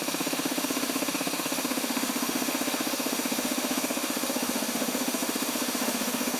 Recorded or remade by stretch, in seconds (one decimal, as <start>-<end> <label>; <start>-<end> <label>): 0.0-6.4 remade